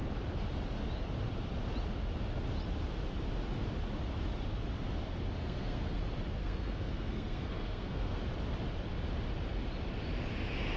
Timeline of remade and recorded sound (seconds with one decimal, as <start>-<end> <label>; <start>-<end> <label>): 0.0-5.4 recorded; 5.4-6.0 remade; 6.0-6.4 recorded; 6.4-8.2 remade; 8.2-10.8 recorded